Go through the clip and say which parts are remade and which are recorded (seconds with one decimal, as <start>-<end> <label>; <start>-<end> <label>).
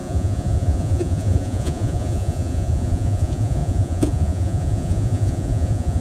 0.0-6.0 remade